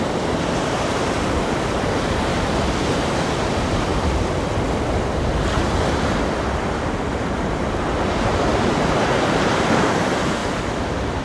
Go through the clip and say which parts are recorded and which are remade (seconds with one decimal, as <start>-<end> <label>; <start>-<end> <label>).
0.0-2.3 remade; 2.3-2.9 recorded; 2.9-3.9 remade; 3.9-8.2 recorded; 8.2-10.4 remade; 10.4-11.2 recorded